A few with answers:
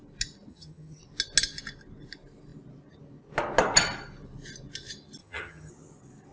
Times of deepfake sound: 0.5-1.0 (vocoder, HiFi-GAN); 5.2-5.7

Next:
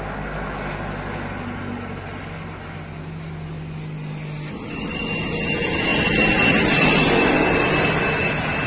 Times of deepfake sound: none

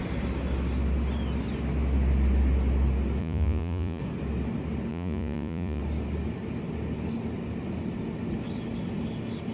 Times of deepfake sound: 3.2-4.0 (vocoder, Vocos); 4.9-5.8

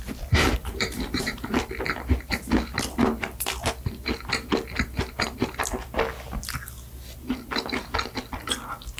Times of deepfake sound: 0.6-1.6 (vocoder, BigVGAN v2)

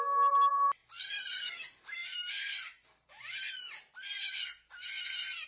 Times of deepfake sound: 0.8-1.5 (vocoder, BigVGAN v2); 2.0-3.5

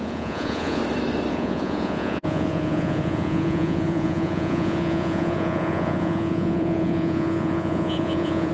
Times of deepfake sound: 0.0-0.8 (vocoder, Vocos); 1.3-8.5

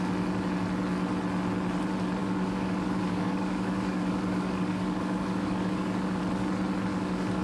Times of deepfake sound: 2.2-6.2 (codec, DAC); 6.9-7.4